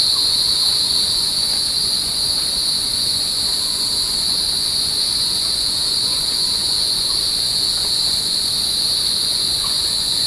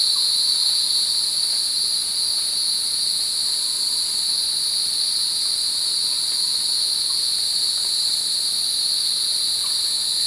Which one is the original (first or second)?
second